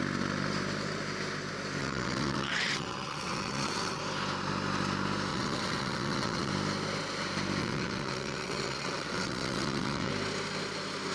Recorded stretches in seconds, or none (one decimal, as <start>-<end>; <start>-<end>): 0.0-1.8; 4.0-5.3; 6.5-7.6; 10.1-11.1